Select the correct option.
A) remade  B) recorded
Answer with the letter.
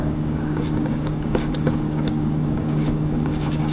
A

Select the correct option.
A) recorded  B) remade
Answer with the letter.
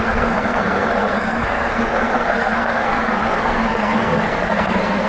B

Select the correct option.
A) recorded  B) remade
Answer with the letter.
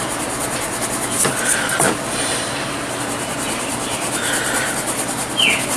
A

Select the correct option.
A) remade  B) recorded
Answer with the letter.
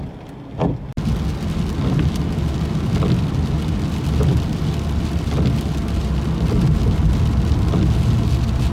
B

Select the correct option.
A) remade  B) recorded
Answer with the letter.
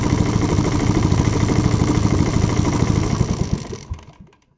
B